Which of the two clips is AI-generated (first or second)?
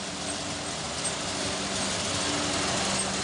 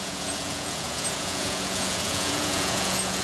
second